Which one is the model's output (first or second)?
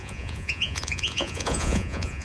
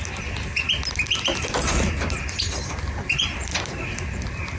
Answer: first